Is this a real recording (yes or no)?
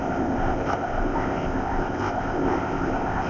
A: no